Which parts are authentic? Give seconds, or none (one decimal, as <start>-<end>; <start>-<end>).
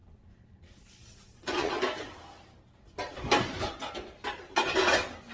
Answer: 1.7-5.3